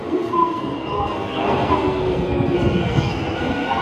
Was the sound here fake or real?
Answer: fake